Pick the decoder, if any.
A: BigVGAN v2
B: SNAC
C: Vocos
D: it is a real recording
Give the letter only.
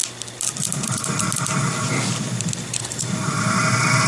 D